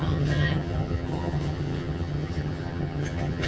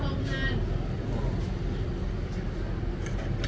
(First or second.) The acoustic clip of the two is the second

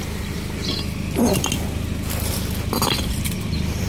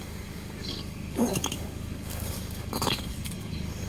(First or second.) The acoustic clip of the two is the first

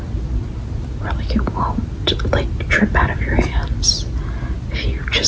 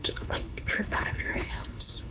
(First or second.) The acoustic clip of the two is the first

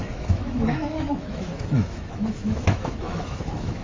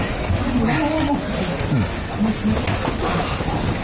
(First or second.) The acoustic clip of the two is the second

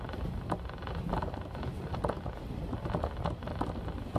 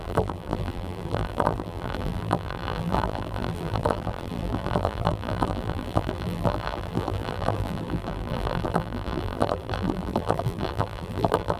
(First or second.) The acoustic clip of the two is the first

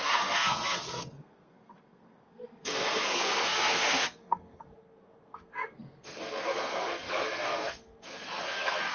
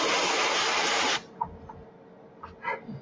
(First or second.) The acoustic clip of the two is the second